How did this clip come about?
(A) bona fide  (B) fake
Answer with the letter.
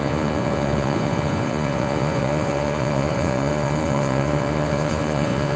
B